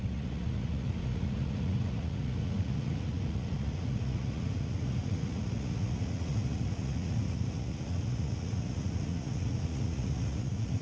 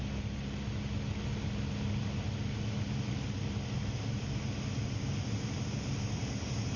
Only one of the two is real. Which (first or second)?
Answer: second